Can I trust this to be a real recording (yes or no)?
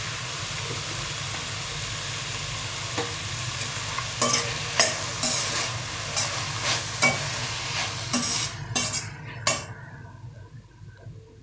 yes